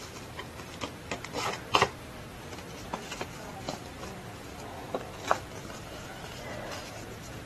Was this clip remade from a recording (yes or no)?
yes